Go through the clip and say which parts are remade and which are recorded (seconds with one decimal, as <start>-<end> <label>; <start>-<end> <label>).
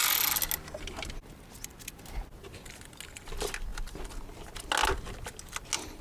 0.0-6.0 recorded